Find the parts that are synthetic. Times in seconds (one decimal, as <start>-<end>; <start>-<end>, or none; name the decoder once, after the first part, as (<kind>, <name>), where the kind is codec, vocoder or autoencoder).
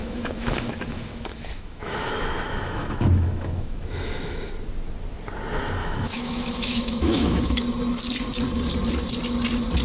0.0-4.5 (autoencoder, DAC-VAE); 5.8-7.6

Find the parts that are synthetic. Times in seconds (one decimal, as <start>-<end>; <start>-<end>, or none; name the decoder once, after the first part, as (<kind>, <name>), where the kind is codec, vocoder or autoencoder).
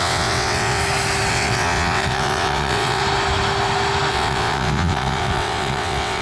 0.0-0.8 (vocoder, WaveNeXt); 1.3-3.0; 4.1-6.2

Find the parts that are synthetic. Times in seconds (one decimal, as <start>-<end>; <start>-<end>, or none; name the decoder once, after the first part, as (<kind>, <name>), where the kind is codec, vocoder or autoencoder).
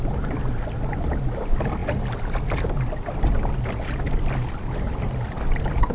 none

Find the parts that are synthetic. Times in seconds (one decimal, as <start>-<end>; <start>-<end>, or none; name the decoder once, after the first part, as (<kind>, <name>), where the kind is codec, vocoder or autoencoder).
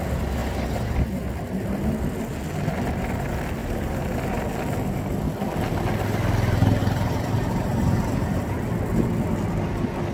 3.6-4.4 (vocoder, BigVGAN v2); 6.8-8.5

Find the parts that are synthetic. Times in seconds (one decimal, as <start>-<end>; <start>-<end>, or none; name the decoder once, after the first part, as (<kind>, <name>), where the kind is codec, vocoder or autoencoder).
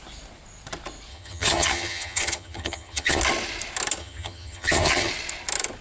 1.1-3.2 (vocoder, HiFi-GAN); 4.0-5.1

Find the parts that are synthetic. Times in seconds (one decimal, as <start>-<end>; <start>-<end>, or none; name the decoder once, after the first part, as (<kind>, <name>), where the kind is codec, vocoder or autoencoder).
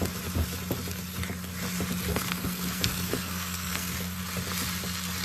2.1-4.2 (codec, SNAC)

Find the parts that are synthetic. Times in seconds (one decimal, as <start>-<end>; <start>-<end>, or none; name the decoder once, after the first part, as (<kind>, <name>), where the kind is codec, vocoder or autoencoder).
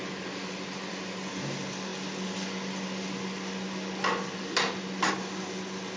none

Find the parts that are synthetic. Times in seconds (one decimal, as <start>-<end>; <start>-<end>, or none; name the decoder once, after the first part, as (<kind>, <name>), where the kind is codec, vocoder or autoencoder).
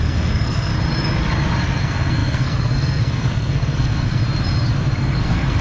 0.0-0.7 (codec, SNAC); 1.8-4.2; 5.0-5.6